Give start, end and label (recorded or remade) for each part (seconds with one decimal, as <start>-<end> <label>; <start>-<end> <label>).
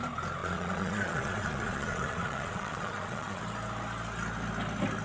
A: 0.0-0.4 recorded; 0.4-3.4 remade; 3.4-5.0 recorded